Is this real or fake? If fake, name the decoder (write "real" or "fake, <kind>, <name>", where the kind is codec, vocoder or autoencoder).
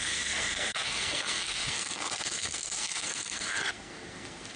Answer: fake, codec, SNAC